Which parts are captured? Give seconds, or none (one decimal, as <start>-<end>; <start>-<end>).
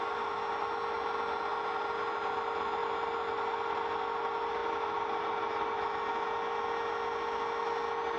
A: 0.0-8.2